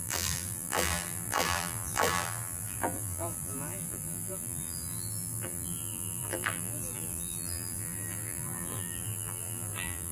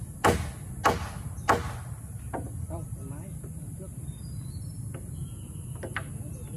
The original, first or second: second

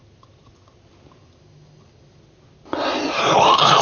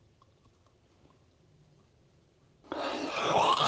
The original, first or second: first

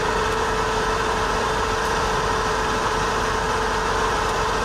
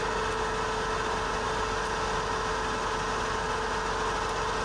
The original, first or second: second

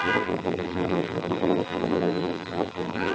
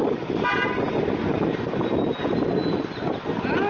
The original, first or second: second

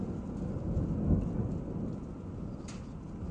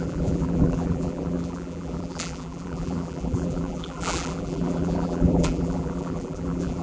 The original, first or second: first